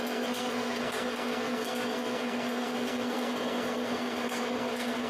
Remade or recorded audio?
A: remade